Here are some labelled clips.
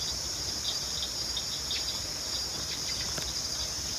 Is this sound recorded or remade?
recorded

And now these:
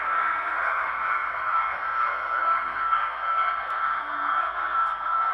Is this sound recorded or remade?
remade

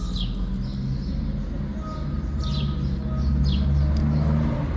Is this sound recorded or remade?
recorded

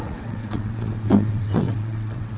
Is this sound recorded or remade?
remade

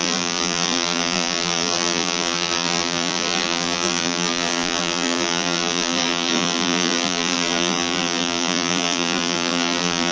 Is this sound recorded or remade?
remade